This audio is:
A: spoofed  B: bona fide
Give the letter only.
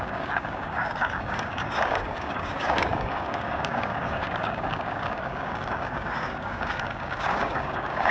A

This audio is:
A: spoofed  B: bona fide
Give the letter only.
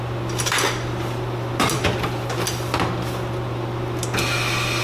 B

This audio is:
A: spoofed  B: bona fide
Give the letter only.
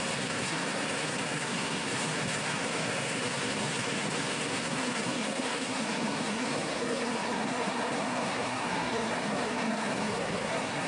A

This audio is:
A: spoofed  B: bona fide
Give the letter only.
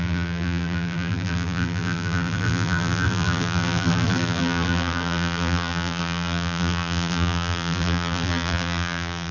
A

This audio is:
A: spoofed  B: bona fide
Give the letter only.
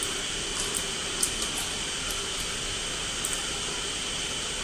B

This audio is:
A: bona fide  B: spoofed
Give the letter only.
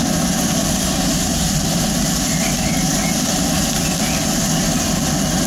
A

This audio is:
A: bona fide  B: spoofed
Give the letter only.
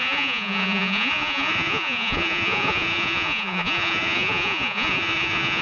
B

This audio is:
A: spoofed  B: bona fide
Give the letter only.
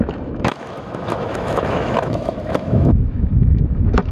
A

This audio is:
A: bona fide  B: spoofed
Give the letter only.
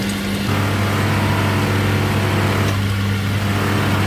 A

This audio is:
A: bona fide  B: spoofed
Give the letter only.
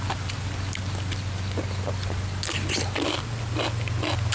A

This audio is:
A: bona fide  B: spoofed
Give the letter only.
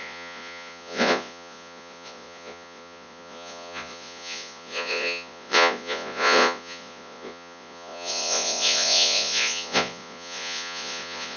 B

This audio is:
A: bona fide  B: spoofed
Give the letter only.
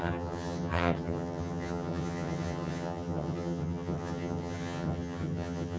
B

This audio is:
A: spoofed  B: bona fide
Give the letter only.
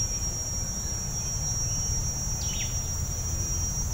B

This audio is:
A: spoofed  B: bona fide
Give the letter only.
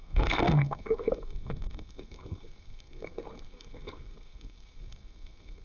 A